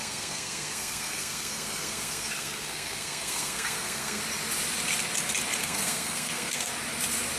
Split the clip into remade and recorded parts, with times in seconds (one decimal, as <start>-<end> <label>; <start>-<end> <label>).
0.0-4.2 remade; 4.2-5.6 recorded; 5.6-6.7 remade; 6.7-7.4 recorded